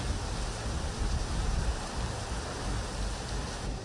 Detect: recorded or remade recorded